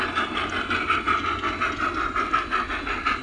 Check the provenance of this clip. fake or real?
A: real